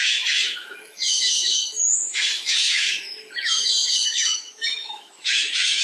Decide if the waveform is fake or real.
fake